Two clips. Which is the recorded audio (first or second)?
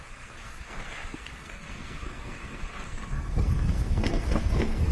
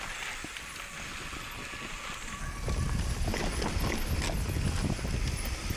second